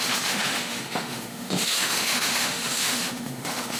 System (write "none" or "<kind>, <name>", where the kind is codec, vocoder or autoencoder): autoencoder, DAC-VAE